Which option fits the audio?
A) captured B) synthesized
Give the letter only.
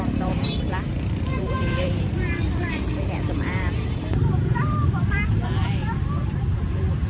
B